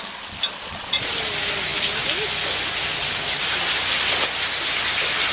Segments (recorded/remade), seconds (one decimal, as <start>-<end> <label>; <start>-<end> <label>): 0.0-0.6 recorded; 0.6-1.1 remade; 1.1-5.3 recorded